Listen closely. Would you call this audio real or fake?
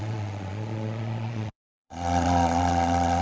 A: fake